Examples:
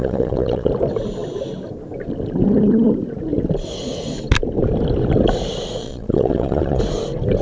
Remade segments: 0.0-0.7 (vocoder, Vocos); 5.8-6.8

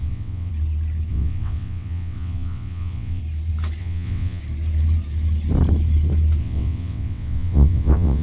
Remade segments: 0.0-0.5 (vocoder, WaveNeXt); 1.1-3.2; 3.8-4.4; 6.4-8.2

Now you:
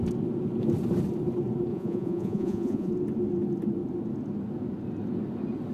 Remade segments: 1.7-2.9 (vocoder, Vocos)

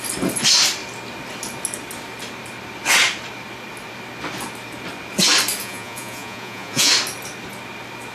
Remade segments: 5.6-6.9 (vocoder, Vocos)

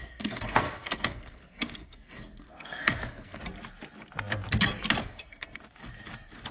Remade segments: 0.0-3.4 (codec, SNAC); 5.0-5.6

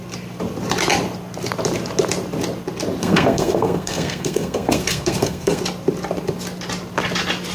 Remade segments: 3.0-5.6 (codec, SNAC)

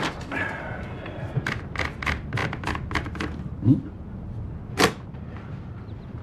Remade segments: none

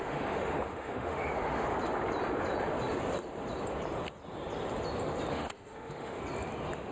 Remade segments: 0.0-1.7 (autoencoder, DAC-VAE); 5.3-6.2